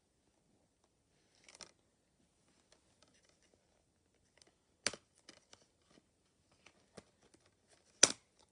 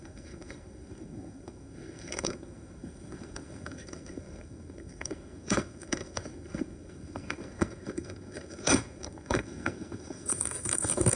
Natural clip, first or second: first